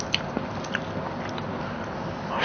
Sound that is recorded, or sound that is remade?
recorded